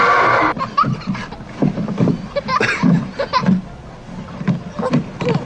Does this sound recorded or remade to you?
recorded